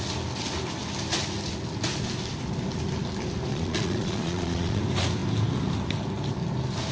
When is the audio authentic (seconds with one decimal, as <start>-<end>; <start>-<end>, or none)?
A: 0.0-3.5; 4.8-6.9